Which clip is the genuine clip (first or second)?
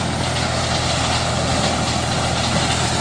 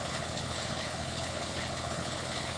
first